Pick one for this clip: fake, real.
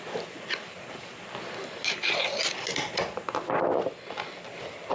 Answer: real